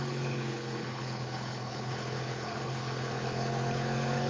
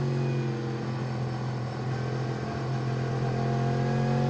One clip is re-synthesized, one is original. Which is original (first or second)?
second